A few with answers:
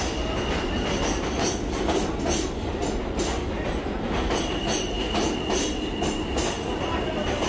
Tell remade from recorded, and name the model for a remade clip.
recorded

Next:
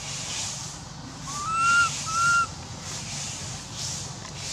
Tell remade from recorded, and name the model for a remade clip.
recorded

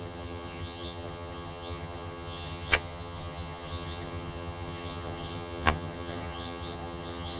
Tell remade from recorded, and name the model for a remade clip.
remade, vocoder, HiFi-GAN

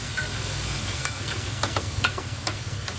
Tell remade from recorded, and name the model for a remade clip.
remade, codec, SNAC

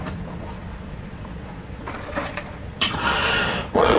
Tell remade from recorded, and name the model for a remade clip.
remade, vocoder, Vocos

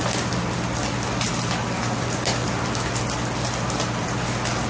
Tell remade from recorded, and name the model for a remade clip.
recorded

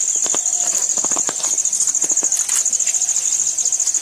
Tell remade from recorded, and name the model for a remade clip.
recorded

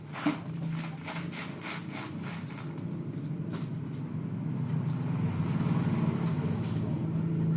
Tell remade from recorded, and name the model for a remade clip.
recorded